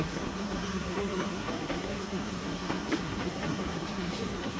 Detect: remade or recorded remade